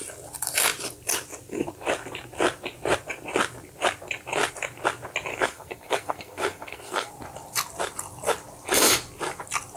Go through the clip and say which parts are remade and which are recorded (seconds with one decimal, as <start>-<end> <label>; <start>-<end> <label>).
0.0-5.3 recorded; 5.3-7.1 remade; 7.1-9.8 recorded